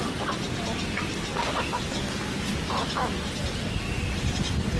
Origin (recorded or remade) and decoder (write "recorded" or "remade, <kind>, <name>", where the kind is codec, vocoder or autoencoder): recorded